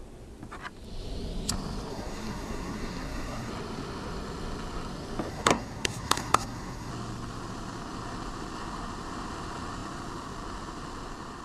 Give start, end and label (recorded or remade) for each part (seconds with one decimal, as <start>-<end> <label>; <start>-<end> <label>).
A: 0.0-1.9 recorded; 1.9-3.5 remade; 3.5-5.3 recorded; 5.3-6.9 remade; 6.9-11.4 recorded